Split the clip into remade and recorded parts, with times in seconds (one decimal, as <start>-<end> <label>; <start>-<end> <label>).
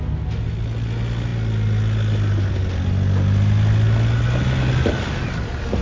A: 0.0-5.8 recorded